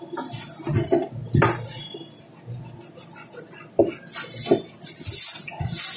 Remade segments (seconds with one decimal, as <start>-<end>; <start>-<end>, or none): none

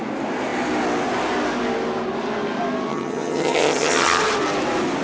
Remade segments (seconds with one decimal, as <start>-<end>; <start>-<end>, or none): 2.9-4.2

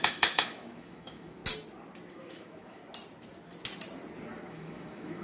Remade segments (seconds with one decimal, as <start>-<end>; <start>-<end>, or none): 0.0-1.4; 2.1-2.8; 4.5-5.2

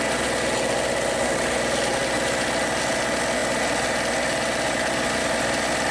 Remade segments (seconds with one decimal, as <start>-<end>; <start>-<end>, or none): none

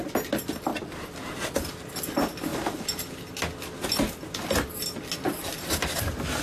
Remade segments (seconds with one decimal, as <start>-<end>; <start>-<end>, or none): 0.7-1.3